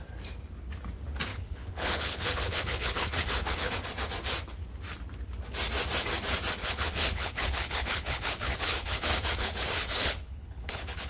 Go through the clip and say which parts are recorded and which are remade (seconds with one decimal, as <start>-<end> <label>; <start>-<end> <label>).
0.0-1.3 recorded; 1.3-3.7 remade; 3.7-6.6 recorded; 6.6-11.1 remade